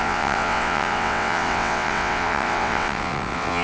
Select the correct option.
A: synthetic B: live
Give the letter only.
A